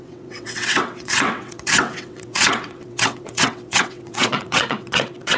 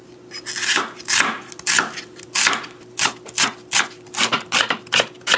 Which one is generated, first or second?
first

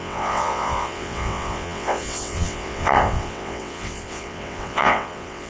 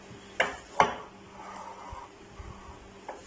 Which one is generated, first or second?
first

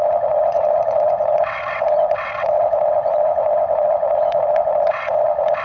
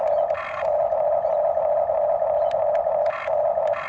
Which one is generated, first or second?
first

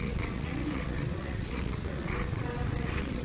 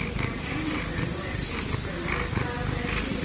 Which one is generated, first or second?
first